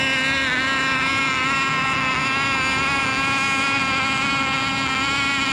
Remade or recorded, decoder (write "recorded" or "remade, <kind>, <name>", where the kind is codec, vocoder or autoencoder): recorded